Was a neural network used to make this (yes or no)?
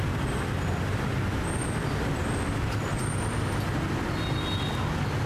no